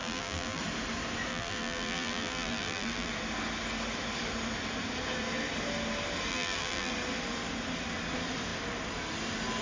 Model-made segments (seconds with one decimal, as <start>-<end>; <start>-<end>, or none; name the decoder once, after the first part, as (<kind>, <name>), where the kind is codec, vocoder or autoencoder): 0.0-0.6 (vocoder, BigVGAN v2); 1.3-3.1; 6.3-6.9